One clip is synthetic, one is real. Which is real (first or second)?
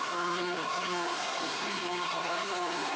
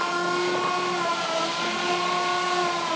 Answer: second